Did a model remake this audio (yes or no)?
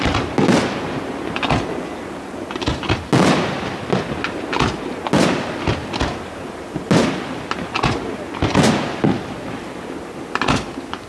no